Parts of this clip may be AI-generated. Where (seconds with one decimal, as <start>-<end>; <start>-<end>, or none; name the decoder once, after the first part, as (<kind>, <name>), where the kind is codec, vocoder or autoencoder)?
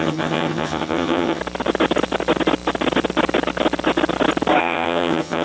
0.0-1.4 (vocoder, HiFi-GAN); 4.6-5.4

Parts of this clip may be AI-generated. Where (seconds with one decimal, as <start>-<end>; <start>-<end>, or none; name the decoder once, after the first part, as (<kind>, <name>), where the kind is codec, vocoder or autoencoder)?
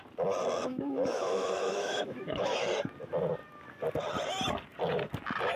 0.7-2.7 (autoencoder, DAC-VAE)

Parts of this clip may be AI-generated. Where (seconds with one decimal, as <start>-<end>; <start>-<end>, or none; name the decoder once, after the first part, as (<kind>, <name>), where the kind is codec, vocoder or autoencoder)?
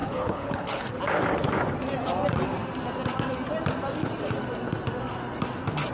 0.0-1.0 (codec, HILCodec)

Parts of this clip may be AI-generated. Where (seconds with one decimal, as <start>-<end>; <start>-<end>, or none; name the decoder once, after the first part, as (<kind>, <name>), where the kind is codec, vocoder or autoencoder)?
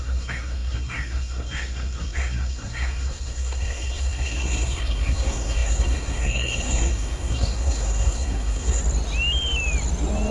0.0-8.8 (codec, SNAC)